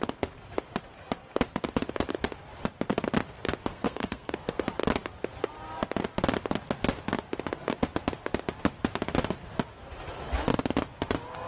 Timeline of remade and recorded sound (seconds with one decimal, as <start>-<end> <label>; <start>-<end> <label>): 0.0-3.7 recorded; 3.7-4.6 remade; 4.6-11.5 recorded